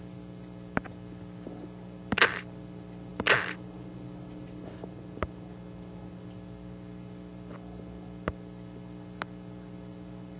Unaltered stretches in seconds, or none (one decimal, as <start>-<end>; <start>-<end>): 0.0-10.4